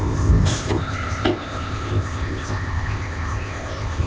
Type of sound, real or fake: fake